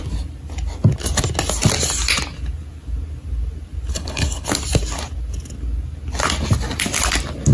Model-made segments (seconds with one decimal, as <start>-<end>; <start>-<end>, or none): 3.9-4.5